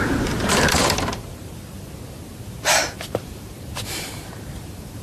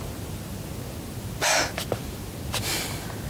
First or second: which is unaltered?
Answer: second